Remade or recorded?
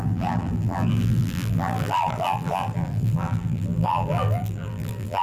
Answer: remade